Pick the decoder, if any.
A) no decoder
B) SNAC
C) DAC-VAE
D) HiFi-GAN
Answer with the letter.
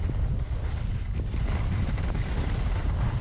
A